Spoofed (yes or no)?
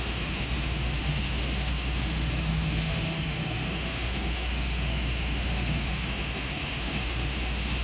yes